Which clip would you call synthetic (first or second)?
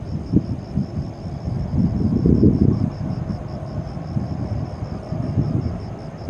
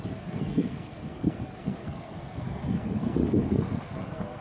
second